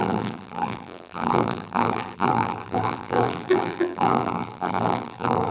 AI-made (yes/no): yes